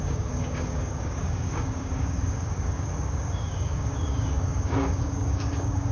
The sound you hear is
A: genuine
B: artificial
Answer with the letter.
B